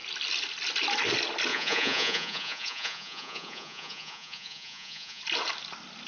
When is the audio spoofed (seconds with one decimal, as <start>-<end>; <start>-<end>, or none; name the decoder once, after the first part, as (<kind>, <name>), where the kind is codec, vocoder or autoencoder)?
1.5-5.2 (vocoder, Vocos)